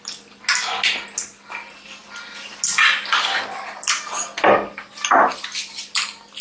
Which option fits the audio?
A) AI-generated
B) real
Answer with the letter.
B